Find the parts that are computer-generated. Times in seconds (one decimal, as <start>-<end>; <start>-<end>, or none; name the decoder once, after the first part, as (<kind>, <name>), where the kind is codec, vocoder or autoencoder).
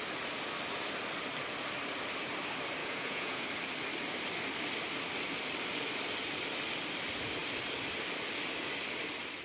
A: 2.8-3.4 (vocoder, Vocos)